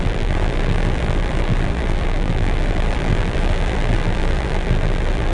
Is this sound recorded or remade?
remade